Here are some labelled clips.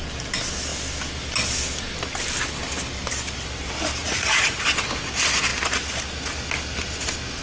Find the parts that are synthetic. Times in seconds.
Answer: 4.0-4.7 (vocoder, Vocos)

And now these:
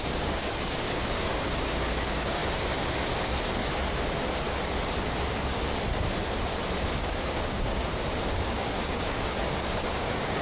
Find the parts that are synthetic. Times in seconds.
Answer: 0.0-2.4 (codec, DAC); 7.0-7.8; 8.5-10.4

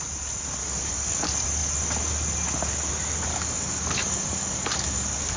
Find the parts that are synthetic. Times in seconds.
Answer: 0.6-1.2 (codec, DAC); 3.3-5.4

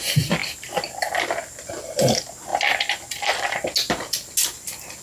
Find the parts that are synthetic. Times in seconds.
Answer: none

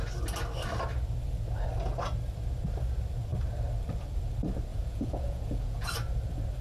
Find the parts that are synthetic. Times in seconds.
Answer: 4.7-5.9 (vocoder, Vocos)

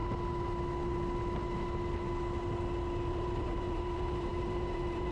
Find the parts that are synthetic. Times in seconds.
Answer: 3.1-5.1 (vocoder, BigVGAN v2)

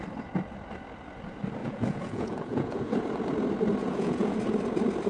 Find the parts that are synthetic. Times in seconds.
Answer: 1.6-3.0 (vocoder, Vocos); 3.8-4.4

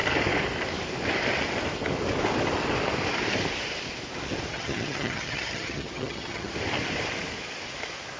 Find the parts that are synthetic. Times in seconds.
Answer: 4.5-6.5 (vocoder, HiFi-GAN)